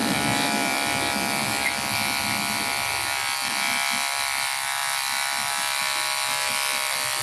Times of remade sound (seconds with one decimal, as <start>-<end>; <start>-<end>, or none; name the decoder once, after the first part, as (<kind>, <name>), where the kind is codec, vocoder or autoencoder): none